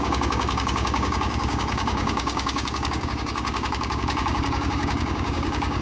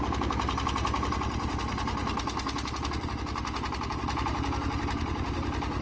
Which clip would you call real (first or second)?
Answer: second